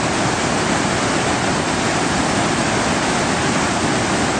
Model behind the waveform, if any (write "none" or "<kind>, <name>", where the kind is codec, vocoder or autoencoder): none